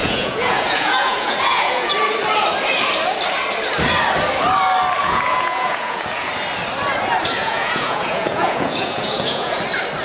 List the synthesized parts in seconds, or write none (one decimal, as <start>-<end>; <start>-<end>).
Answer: 0.0-1.9; 5.0-6.3; 7.4-9.6